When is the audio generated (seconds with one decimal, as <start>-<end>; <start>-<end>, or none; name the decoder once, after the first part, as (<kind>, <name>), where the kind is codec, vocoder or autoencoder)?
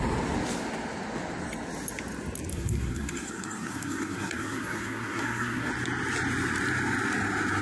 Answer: 2.5-5.7 (codec, SNAC)